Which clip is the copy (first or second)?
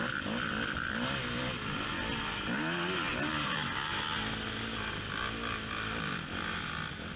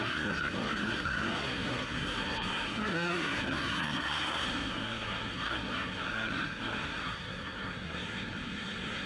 second